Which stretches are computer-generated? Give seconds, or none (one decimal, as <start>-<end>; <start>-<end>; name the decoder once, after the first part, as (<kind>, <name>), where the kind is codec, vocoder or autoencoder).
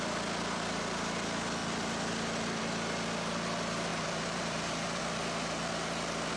3.9-5.0 (vocoder, BigVGAN v2)